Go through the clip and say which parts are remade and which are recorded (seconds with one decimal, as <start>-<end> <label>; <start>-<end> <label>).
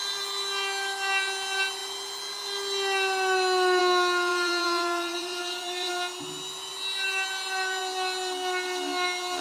0.0-4.3 recorded; 4.3-5.9 remade; 5.9-9.4 recorded